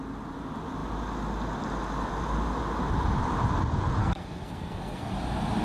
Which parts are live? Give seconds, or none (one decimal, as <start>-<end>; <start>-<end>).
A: 0.0-4.0; 5.1-5.6

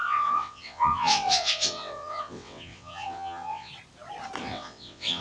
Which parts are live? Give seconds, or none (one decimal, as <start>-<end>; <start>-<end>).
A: 3.7-4.4

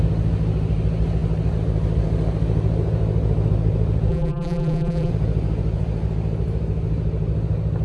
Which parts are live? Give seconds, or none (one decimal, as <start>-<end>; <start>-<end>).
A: 0.0-4.1; 5.1-7.8

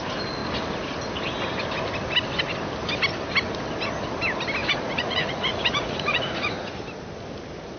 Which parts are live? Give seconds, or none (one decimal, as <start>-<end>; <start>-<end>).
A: 0.0-4.6; 6.5-7.8